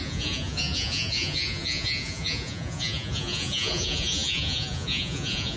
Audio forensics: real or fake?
fake